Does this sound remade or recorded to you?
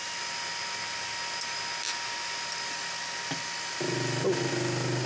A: recorded